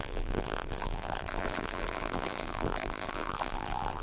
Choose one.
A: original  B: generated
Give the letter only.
B